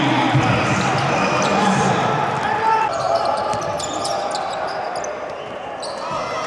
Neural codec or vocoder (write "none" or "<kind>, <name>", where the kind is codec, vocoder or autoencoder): none